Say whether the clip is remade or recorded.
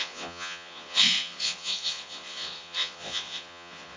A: remade